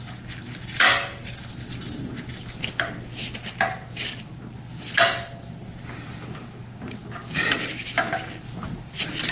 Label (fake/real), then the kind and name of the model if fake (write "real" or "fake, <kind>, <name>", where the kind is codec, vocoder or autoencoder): real